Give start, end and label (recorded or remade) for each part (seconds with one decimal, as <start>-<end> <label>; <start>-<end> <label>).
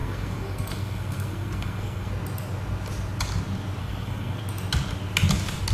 0.0-2.1 remade; 2.1-3.8 recorded; 3.8-4.4 remade; 4.4-5.7 recorded